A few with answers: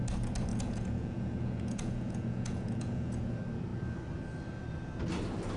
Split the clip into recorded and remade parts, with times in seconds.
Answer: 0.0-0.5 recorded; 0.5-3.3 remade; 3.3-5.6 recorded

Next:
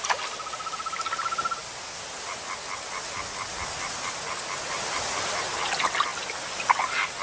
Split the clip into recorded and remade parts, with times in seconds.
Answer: 0.0-7.2 recorded

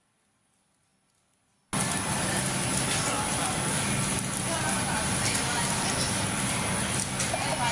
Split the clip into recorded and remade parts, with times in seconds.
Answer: 0.0-7.7 recorded

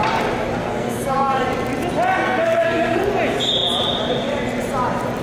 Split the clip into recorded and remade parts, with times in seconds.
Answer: 0.0-0.6 recorded; 0.6-1.4 remade; 1.4-2.2 recorded; 2.2-3.1 remade; 3.1-5.2 recorded